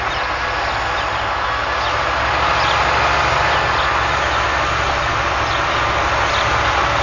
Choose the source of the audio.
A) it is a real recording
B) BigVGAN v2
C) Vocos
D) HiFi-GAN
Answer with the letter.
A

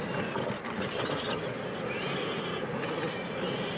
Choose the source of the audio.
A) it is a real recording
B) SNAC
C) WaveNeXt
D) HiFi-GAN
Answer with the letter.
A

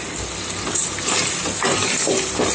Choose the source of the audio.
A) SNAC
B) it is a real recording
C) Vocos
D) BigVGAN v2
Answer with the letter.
B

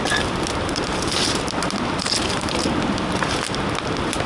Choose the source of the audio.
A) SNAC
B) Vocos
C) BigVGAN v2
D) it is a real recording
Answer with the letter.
D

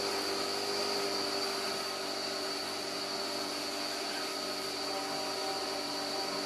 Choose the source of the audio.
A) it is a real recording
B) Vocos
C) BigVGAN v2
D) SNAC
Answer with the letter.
A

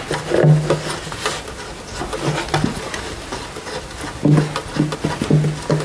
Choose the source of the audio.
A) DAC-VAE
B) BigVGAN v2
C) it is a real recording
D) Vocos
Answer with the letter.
C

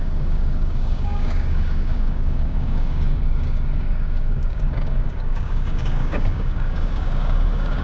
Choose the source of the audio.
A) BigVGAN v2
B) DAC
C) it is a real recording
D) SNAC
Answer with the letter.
B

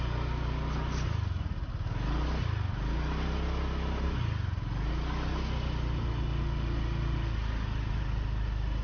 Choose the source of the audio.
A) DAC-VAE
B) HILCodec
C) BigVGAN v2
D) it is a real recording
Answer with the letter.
D